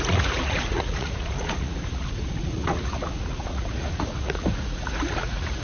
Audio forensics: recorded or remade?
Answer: remade